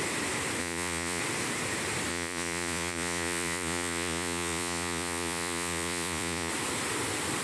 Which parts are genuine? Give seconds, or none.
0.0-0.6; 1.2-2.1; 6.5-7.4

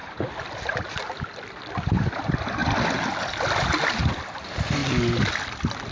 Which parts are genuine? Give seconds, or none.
0.0-0.6; 2.6-3.2

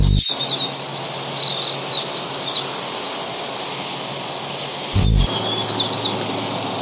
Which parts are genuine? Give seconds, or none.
0.0-6.8

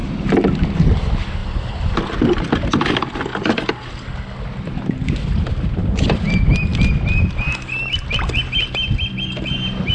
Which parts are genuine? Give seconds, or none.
0.8-1.4; 2.0-9.9

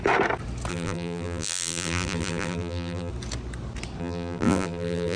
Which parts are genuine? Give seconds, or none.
0.0-0.7; 3.1-4.0

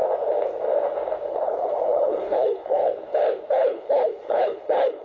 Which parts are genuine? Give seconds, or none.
0.0-1.3; 2.8-3.5

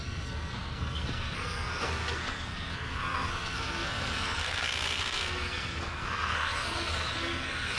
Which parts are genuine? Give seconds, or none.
none